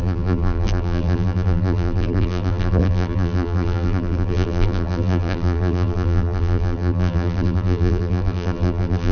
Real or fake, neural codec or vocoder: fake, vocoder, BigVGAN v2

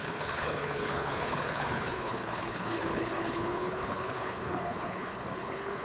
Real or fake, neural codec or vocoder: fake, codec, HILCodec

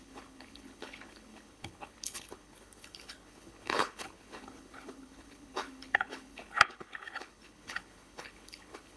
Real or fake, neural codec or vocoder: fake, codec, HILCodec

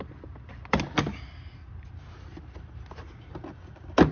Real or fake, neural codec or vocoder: real